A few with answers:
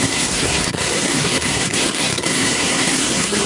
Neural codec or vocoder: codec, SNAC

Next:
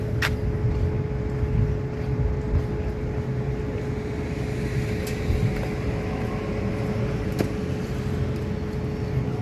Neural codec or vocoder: none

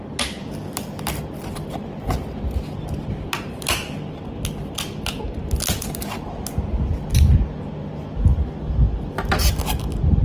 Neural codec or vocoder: none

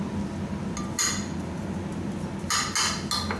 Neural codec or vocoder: none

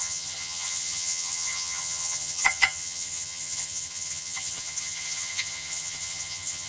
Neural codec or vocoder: vocoder, HiFi-GAN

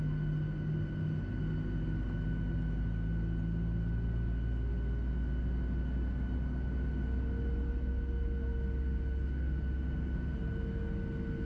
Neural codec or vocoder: none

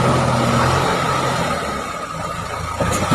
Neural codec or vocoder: none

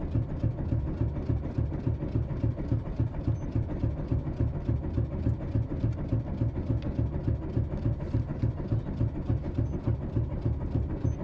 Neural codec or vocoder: none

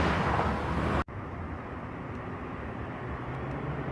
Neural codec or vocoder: none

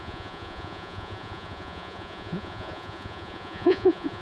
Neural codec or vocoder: vocoder, Vocos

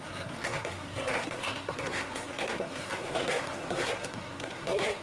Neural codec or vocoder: codec, SNAC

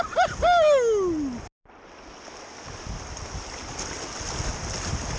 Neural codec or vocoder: none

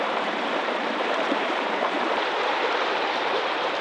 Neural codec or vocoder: vocoder, BigVGAN v2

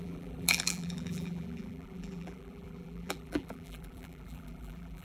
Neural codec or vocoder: vocoder, BigVGAN v2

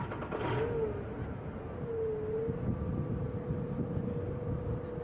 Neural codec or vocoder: none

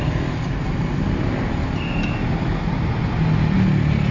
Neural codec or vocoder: none